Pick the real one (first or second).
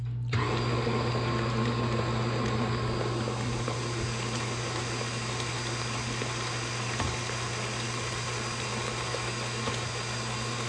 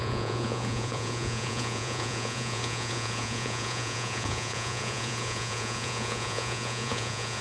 first